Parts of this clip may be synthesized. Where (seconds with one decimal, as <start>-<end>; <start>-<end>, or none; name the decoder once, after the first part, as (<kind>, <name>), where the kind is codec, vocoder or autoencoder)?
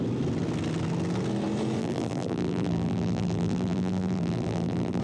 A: 1.8-5.0 (vocoder, BigVGAN v2)